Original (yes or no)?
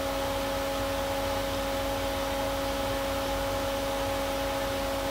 yes